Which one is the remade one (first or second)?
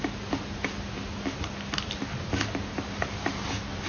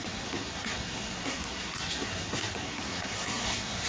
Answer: second